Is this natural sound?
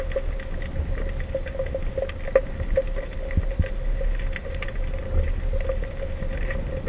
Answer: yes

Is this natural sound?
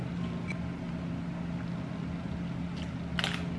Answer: yes